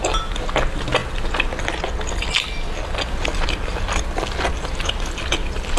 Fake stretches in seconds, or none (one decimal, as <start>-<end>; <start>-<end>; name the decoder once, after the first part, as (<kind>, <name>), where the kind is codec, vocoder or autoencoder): none